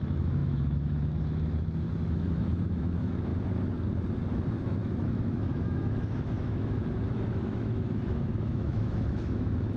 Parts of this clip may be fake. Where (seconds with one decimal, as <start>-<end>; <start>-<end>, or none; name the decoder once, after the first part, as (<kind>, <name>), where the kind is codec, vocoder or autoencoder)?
0.0-3.3 (autoencoder, DAC-VAE); 4.3-9.8